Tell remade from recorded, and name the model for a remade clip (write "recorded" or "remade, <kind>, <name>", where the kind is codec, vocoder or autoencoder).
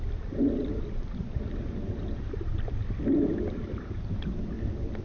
recorded